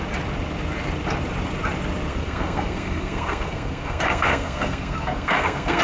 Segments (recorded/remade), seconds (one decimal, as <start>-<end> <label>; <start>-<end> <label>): 0.0-2.1 recorded; 2.1-5.8 remade